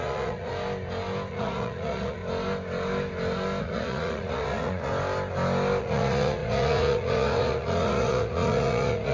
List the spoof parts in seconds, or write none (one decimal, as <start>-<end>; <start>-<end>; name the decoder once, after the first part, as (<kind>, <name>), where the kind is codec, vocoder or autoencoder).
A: 0.0-0.5 (vocoder, Vocos); 1.3-2.2; 3.6-4.9; 5.8-9.1